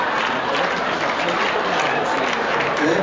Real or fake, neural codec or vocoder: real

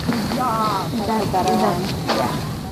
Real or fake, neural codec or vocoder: real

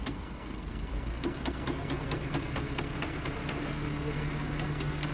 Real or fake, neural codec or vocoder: fake, codec, SNAC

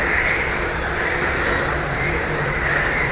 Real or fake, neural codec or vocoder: real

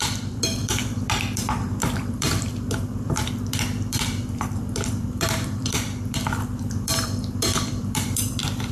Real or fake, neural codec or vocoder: fake, vocoder, BigVGAN v2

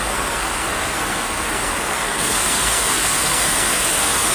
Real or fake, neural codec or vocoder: fake, codec, SNAC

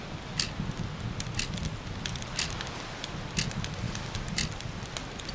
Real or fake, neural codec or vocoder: real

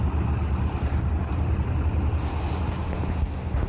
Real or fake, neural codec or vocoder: real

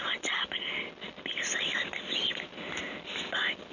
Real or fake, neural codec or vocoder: fake, vocoder, BigVGAN v2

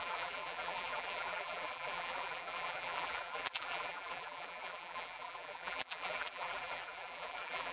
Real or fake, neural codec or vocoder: fake, vocoder, BigVGAN v2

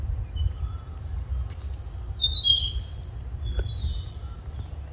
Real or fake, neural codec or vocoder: real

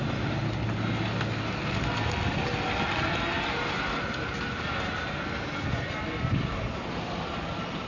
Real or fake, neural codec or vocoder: real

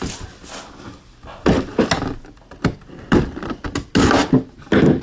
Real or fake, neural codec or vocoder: real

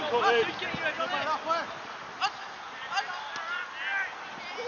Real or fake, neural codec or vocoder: real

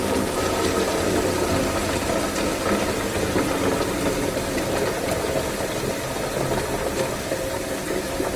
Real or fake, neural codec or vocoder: real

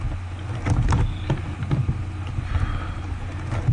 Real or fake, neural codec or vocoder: real